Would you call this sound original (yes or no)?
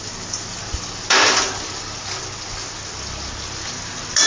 yes